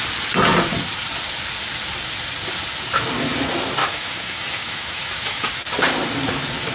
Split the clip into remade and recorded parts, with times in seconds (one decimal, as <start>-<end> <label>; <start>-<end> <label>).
0.0-3.8 recorded; 3.8-5.5 remade; 5.5-6.7 recorded